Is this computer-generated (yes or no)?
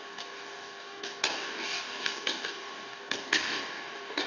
yes